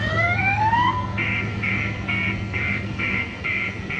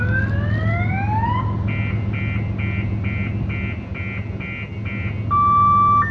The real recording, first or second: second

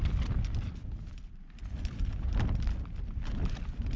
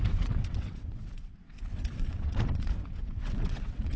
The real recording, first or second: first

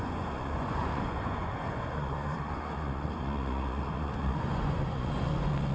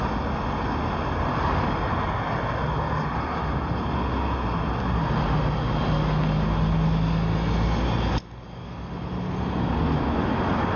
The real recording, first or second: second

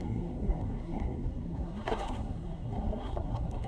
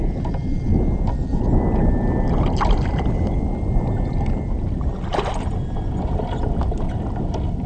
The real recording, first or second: second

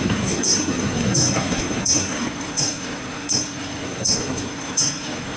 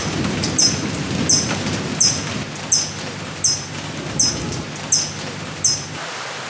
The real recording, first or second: second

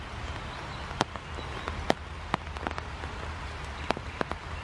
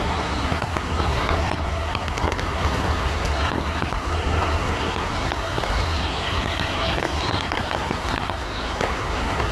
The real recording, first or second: first